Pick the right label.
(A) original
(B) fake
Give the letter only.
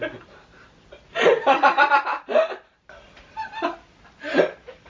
A